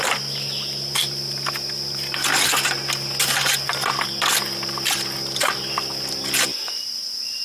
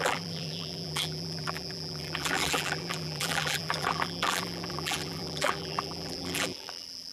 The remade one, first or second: second